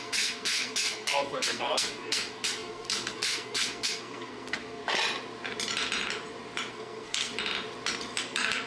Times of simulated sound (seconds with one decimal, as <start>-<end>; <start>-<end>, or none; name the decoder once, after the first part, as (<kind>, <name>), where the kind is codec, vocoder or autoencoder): 0.0-4.8 (codec, SNAC); 6.7-7.3; 8.2-8.7